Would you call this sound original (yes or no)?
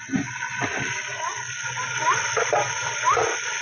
yes